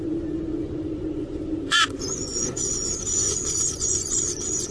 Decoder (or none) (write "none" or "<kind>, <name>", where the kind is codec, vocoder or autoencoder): vocoder, Vocos